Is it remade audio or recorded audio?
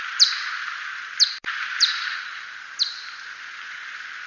remade